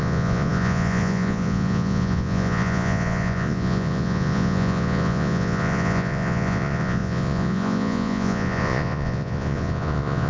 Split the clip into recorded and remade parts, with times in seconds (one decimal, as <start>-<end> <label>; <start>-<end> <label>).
0.0-10.3 remade